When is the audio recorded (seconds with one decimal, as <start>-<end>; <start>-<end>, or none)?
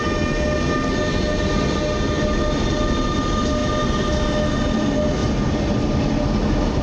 0.0-5.2; 6.1-6.8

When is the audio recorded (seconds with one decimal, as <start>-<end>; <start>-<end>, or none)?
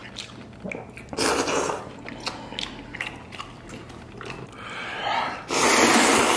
0.0-6.4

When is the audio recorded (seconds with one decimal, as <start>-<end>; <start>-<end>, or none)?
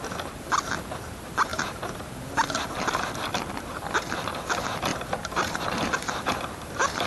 0.0-1.5; 2.2-4.9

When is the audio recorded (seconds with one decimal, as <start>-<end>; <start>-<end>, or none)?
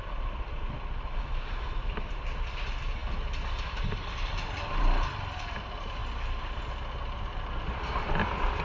0.6-8.6